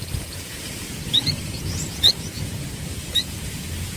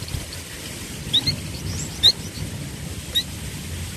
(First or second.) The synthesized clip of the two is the first